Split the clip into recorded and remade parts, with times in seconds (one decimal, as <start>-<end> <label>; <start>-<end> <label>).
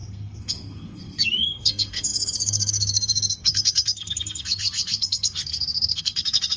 0.0-6.6 remade